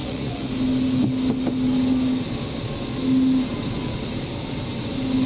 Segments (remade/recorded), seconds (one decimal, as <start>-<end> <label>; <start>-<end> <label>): 0.0-0.5 remade; 0.5-5.3 recorded